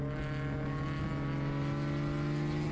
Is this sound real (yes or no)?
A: yes